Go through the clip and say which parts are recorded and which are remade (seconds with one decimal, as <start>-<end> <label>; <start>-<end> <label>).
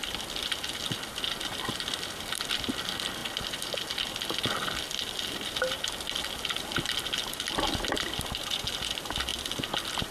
0.0-10.1 recorded